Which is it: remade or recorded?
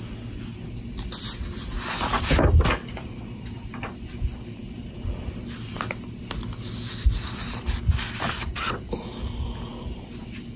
recorded